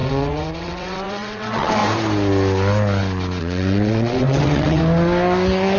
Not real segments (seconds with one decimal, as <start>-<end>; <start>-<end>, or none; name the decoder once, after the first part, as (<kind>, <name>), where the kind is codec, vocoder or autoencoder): 0.0-1.8 (vocoder, WaveNeXt); 3.4-4.8